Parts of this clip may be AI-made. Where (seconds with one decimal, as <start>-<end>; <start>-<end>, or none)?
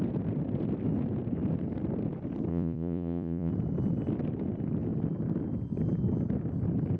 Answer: 2.5-3.5